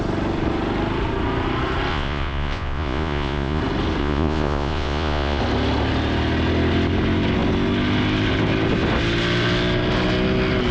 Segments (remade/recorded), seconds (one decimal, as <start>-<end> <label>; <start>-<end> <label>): 0.0-1.9 recorded; 1.9-3.6 remade; 3.6-4.0 recorded; 4.0-5.4 remade; 5.4-10.7 recorded

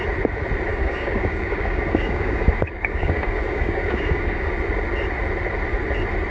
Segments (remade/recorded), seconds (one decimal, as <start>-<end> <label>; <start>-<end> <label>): 0.0-0.7 recorded; 0.7-4.5 remade; 4.5-6.3 recorded

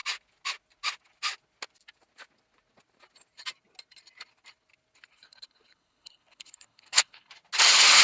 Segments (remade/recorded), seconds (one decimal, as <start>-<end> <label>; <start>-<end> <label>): 0.0-5.1 recorded; 5.1-7.3 remade; 7.3-8.0 recorded

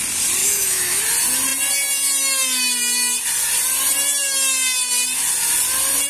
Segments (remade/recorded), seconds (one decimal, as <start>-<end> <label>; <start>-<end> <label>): 0.0-0.4 recorded; 0.4-1.0 remade; 1.0-6.1 recorded